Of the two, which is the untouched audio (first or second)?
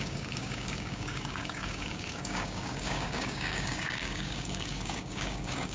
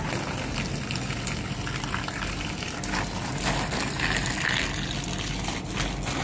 second